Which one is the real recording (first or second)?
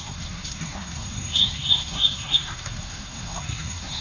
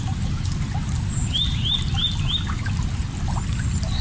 second